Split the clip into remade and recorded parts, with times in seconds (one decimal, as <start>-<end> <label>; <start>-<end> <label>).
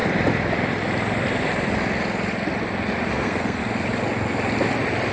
0.0-3.1 recorded; 3.1-3.6 remade; 3.6-5.1 recorded